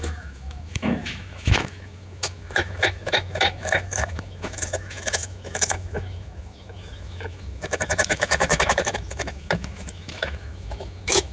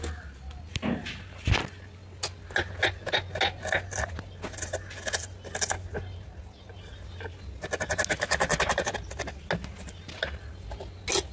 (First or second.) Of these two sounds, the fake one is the first